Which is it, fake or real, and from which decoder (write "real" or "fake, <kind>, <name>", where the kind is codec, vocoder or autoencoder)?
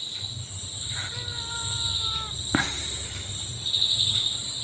real